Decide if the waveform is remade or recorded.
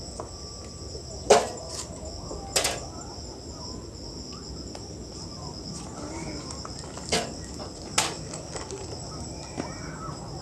recorded